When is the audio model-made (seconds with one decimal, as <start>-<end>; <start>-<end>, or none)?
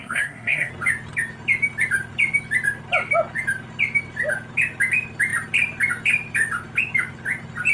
0.0-0.7